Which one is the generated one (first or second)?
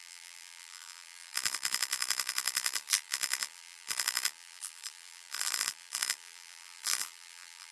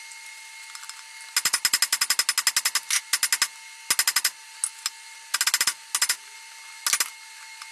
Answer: first